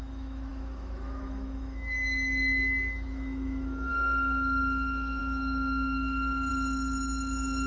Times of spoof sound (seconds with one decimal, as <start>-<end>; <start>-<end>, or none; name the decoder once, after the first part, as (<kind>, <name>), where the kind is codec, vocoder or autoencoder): 0.0-7.7 (autoencoder, DAC-VAE)